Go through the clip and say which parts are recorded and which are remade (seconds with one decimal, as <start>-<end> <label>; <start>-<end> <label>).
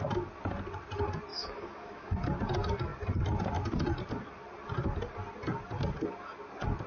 0.0-1.3 recorded; 1.3-2.1 remade; 2.1-6.9 recorded